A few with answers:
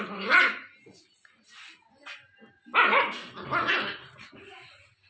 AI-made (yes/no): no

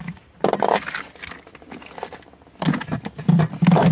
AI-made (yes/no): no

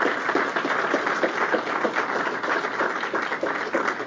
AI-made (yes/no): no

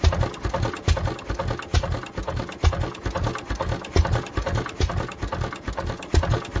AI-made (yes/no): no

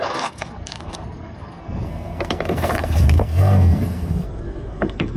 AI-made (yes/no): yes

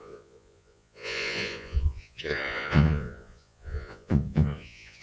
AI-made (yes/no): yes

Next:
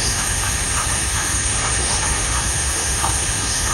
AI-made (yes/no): yes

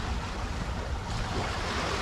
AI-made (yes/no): no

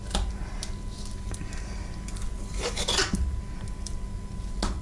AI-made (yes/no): no